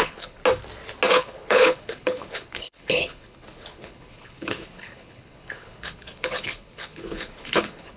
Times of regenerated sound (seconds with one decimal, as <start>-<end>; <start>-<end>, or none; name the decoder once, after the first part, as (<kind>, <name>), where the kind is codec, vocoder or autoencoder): 0.0-0.4 (codec, HILCodec); 1.1-8.0